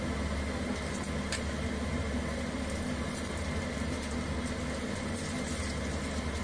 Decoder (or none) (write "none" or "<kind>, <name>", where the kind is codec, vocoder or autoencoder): none